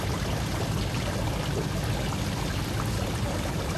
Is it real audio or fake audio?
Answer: real